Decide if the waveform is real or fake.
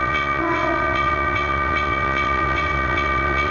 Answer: fake